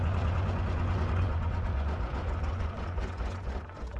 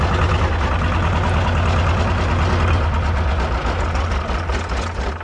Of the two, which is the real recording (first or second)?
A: second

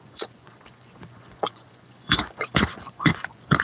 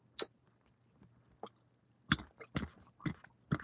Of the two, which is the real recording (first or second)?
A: second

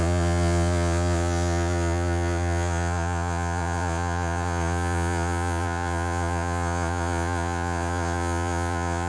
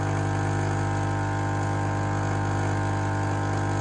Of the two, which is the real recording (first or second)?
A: second